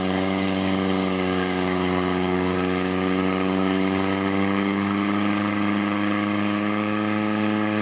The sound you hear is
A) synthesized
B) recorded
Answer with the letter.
A